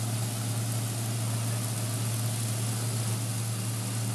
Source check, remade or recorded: recorded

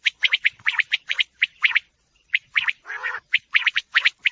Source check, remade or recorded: remade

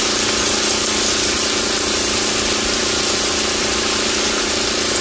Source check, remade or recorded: recorded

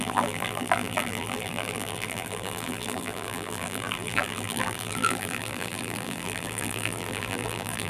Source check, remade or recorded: remade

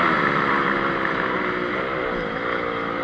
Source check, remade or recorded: recorded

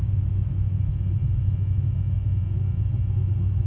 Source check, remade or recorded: remade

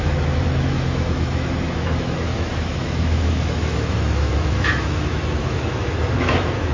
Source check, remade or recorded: remade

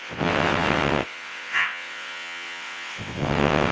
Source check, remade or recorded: remade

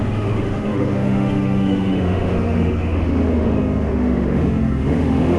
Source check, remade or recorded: remade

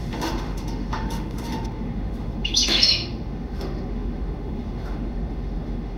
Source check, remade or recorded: remade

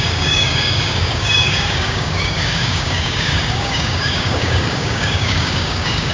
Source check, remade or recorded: remade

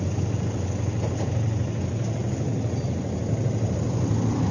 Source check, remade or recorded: recorded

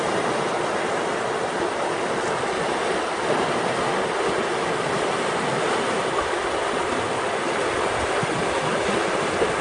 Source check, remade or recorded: recorded